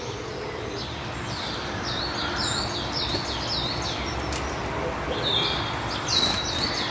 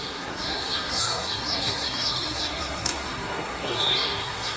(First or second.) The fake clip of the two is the second